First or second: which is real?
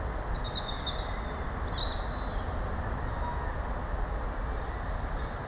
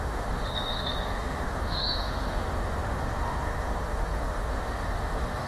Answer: first